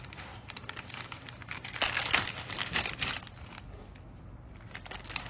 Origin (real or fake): real